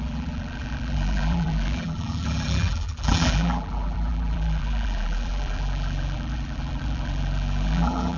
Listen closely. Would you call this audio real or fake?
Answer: fake